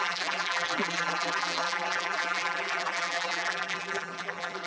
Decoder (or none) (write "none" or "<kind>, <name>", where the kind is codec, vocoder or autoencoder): vocoder, BigVGAN v2